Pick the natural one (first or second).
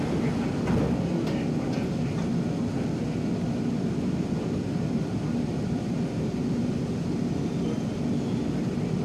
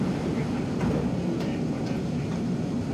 first